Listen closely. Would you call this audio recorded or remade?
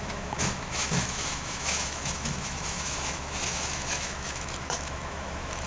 remade